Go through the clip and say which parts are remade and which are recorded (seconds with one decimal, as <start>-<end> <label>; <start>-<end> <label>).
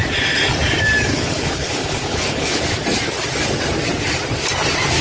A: 0.0-1.1 recorded; 1.1-2.6 remade; 2.6-5.0 recorded